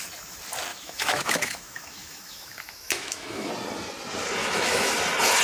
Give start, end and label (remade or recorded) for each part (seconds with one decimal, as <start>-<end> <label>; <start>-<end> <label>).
0.0-0.7 recorded; 0.7-3.5 remade; 3.5-4.4 recorded; 4.4-4.9 remade; 4.9-5.4 recorded